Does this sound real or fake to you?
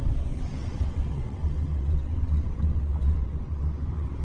fake